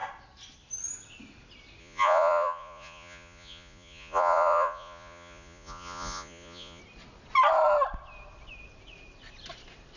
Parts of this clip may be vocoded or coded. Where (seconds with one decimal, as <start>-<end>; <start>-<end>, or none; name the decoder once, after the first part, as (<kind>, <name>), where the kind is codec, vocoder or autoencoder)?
1.8-6.8 (vocoder, Vocos)